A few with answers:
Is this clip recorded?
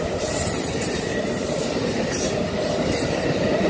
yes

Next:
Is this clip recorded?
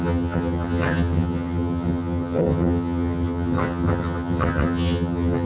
no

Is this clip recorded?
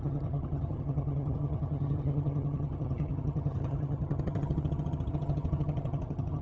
no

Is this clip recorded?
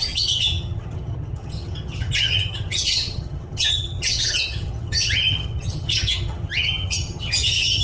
no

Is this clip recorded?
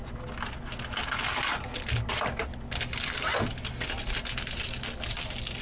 yes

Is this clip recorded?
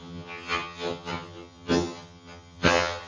no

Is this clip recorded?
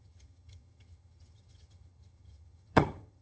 no